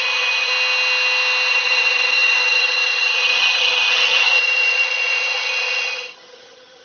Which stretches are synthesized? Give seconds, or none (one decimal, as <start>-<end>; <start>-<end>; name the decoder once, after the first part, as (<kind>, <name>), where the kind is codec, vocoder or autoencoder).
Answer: 0.0-0.5 (vocoder, HiFi-GAN); 1.5-6.8